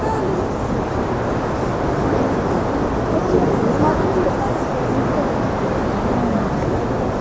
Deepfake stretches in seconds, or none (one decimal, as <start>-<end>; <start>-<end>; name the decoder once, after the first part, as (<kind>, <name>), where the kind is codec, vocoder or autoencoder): none